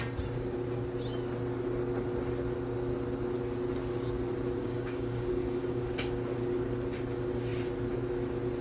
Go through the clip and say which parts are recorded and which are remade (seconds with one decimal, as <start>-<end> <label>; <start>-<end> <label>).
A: 0.0-4.6 recorded; 4.6-5.8 remade; 5.8-8.6 recorded